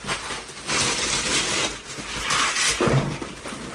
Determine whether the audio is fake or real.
real